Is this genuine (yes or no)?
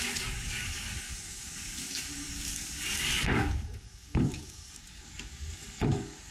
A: no